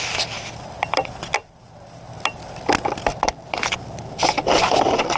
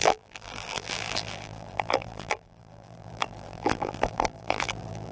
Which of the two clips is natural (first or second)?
first